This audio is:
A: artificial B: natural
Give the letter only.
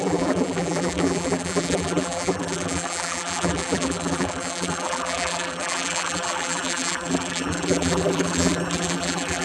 A